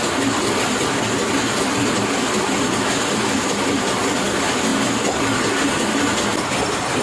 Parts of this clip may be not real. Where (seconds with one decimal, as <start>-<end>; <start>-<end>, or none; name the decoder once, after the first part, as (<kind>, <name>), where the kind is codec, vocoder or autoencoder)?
none